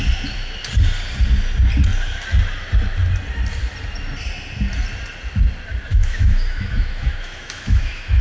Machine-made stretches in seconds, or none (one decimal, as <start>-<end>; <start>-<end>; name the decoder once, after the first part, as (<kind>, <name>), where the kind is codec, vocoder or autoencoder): 5.9-8.2 (autoencoder, DAC-VAE)